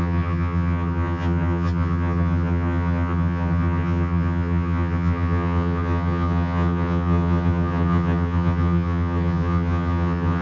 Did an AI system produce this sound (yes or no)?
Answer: yes